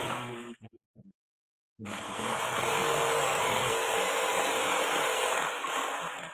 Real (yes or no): no